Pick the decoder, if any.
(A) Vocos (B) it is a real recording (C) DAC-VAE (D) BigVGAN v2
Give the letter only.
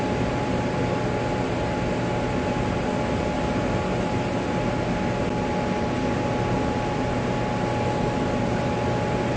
B